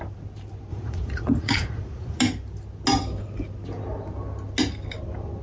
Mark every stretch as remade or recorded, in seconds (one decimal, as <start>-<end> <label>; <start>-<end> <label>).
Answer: 0.0-0.7 recorded; 0.7-2.2 remade; 2.2-5.4 recorded